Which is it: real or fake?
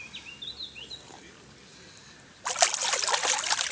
real